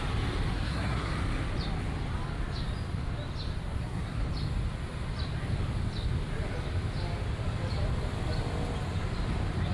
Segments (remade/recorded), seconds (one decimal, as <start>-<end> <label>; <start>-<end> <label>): 0.0-0.5 recorded; 0.5-1.1 remade; 1.1-3.8 recorded; 3.8-4.3 remade; 4.3-9.7 recorded